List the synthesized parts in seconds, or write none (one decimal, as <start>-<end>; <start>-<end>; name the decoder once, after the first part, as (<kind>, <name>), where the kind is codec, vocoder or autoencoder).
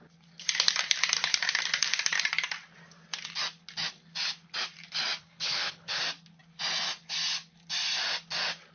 5.2-6.0 (codec, HILCodec)